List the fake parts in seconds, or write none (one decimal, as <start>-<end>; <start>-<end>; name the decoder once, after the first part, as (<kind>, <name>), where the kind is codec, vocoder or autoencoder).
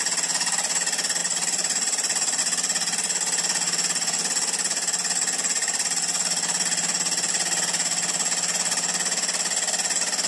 1.2-2.4 (vocoder, BigVGAN v2)